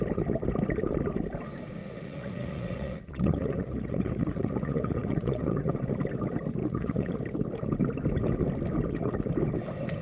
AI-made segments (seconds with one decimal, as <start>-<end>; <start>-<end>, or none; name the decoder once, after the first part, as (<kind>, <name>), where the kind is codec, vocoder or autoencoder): 1.8-5.7 (vocoder, Vocos); 6.6-7.2